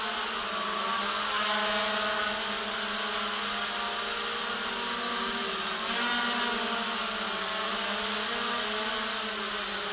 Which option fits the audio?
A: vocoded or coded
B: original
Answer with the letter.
B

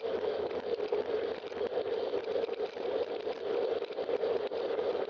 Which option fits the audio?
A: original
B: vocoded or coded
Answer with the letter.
A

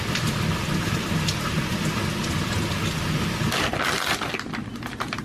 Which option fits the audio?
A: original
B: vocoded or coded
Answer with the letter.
A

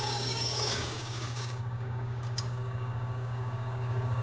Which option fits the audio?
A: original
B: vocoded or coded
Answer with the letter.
B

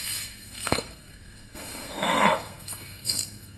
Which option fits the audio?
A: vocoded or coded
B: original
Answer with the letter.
A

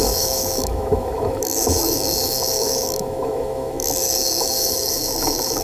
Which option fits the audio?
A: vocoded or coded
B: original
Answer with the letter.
A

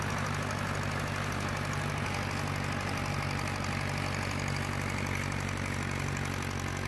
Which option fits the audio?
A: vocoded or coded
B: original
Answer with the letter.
B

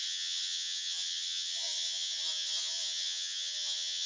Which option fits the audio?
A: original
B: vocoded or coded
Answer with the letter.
B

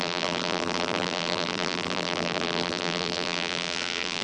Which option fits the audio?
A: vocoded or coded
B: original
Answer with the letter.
A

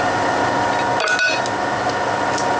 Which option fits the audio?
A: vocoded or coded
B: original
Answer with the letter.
B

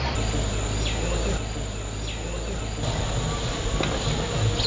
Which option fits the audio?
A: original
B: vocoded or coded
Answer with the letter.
A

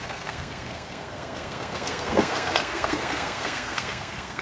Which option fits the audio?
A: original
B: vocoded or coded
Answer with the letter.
B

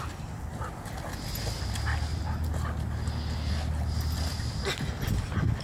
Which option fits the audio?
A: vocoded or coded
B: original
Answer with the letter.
B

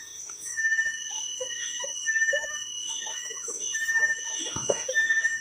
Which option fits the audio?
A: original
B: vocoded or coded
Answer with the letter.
B